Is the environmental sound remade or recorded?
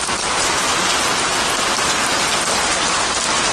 recorded